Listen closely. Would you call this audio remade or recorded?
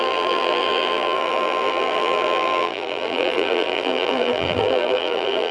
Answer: remade